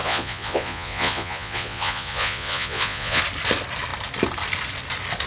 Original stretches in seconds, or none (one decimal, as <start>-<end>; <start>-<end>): 3.2-5.3